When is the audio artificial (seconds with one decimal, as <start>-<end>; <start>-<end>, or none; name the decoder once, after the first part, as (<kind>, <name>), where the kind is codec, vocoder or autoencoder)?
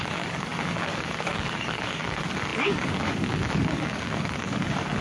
0.0-5.0 (codec, DAC)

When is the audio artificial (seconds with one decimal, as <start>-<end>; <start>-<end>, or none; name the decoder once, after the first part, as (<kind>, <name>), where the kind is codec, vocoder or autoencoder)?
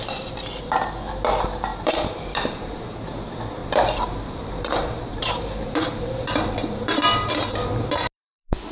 1.7-2.8 (vocoder, BigVGAN v2); 3.6-7.3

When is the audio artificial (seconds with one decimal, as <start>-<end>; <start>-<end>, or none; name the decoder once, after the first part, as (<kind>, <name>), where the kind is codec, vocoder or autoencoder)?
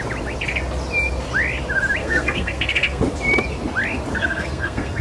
2.0-3.0 (codec, SNAC); 4.1-5.0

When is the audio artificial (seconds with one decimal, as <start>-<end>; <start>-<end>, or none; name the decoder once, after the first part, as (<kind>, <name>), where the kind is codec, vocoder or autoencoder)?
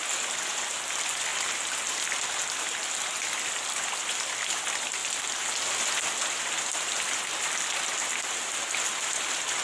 none